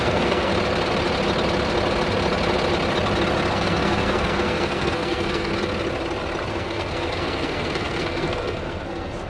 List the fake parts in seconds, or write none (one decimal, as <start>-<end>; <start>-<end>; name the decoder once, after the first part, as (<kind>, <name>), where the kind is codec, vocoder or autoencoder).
0.0-0.5 (codec, SNAC); 3.5-5.5; 6.5-9.3